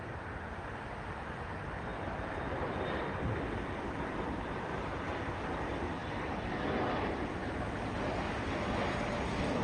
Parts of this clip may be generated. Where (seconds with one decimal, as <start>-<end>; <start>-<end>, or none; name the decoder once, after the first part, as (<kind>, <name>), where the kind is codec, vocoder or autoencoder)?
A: 1.9-2.9 (vocoder, BigVGAN v2); 6.0-6.9